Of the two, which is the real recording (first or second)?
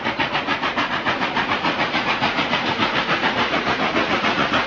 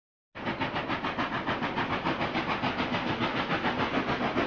second